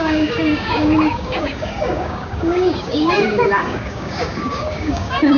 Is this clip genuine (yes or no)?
no